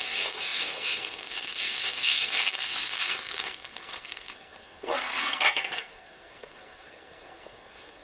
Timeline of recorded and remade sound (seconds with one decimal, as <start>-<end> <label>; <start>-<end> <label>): 0.0-8.0 remade